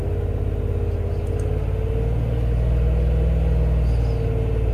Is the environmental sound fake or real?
real